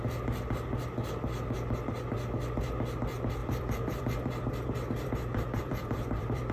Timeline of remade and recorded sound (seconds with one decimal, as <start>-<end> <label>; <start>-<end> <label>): 0.0-3.4 recorded; 3.4-6.5 remade